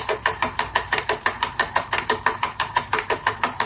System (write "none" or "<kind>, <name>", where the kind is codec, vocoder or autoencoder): vocoder, BigVGAN v2